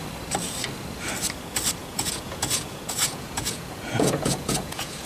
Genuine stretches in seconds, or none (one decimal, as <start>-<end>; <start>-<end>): 0.0-1.8